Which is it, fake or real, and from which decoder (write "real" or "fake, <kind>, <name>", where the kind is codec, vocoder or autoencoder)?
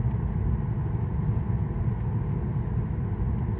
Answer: real